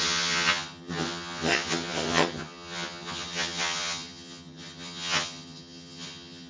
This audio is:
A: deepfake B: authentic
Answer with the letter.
A